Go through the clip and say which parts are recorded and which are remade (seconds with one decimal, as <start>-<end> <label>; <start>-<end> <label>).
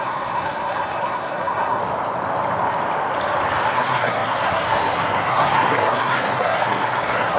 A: 0.0-1.8 remade; 1.8-3.7 recorded; 3.7-7.4 remade